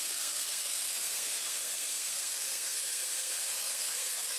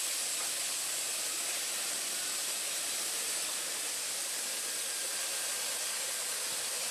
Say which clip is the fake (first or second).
first